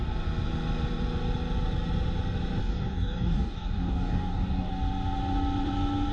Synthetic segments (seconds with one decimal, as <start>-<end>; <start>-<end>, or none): 2.6-4.7